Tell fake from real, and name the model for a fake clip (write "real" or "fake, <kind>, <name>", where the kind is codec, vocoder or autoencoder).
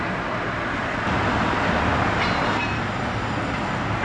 real